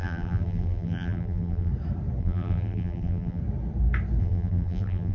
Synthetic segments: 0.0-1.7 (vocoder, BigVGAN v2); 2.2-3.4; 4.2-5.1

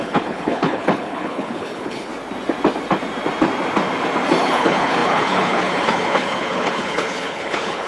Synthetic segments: 0.0-2.1 (codec, HILCodec); 4.4-7.9

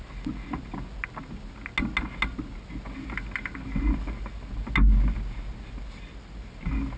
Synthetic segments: none

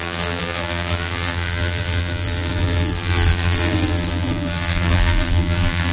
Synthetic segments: 0.0-5.9 (vocoder, BigVGAN v2)

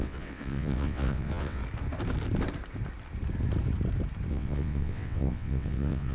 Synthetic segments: 0.0-1.6 (vocoder, WaveNeXt); 4.3-6.1

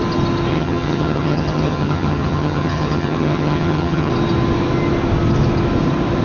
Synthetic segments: 0.5-4.1 (vocoder, HiFi-GAN)

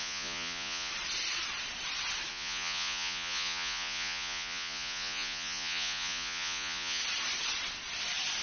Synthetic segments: 0.0-0.9 (vocoder, Vocos); 2.3-7.0